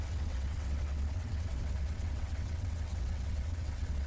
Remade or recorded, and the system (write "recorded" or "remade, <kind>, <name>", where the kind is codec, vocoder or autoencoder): remade, vocoder, WaveNeXt